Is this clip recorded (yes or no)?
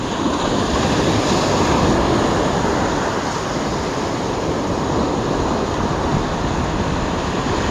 yes